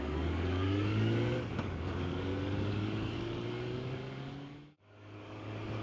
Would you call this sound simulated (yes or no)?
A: yes